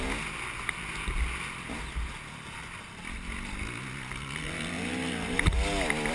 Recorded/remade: recorded